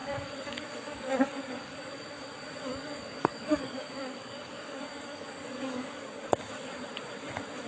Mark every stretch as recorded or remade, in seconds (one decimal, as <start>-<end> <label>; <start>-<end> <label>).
0.0-2.1 remade; 2.1-2.7 recorded; 2.7-6.4 remade; 6.4-7.7 recorded